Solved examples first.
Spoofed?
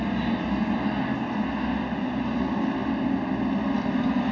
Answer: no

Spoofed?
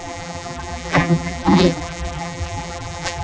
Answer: yes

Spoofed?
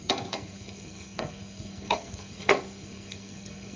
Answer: yes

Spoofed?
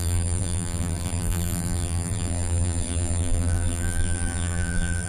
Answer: yes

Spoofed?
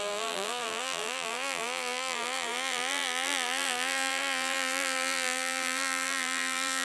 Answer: yes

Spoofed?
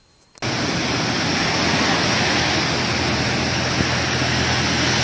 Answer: no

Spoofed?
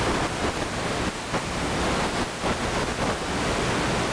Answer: no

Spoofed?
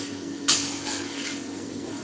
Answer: yes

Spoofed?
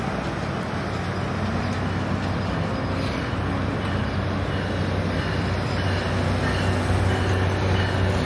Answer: no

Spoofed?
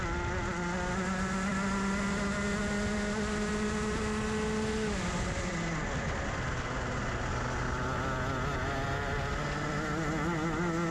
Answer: no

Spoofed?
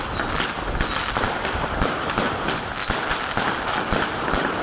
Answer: no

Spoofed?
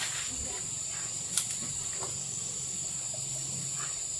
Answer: no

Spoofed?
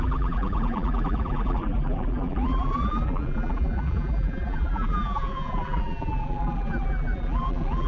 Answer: yes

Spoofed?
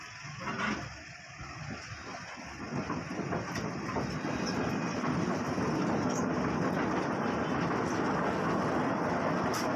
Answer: no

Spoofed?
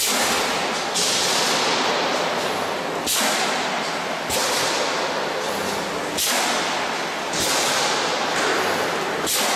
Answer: no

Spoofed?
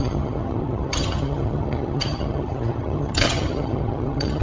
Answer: yes